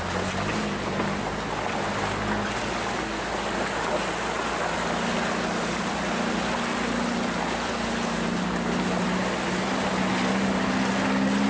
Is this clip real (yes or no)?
yes